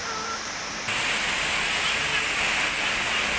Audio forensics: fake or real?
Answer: real